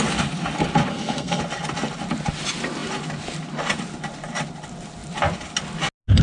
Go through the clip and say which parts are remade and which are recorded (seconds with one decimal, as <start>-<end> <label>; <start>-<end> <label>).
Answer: 0.0-0.9 recorded; 0.9-1.4 remade; 1.4-6.2 recorded